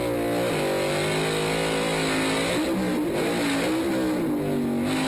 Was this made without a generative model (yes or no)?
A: yes